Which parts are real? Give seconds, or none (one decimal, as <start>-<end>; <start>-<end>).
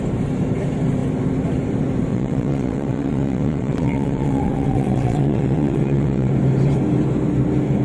0.0-2.1; 6.3-7.8